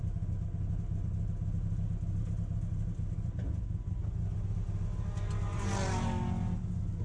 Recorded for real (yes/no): yes